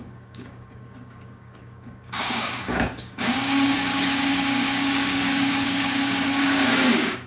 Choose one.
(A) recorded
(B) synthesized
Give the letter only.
B